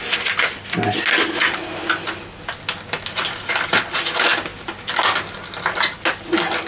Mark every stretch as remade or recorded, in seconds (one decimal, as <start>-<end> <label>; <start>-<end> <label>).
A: 0.0-6.7 recorded